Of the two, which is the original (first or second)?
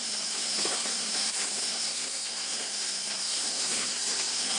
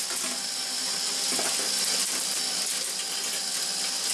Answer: second